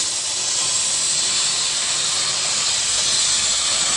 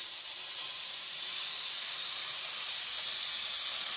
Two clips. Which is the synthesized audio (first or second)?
second